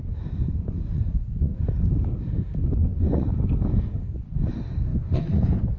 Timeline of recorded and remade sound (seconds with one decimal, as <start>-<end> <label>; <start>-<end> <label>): 0.0-0.9 recorded; 0.9-1.7 remade; 1.7-2.8 recorded; 2.8-3.3 remade; 3.3-4.9 recorded; 4.9-5.8 remade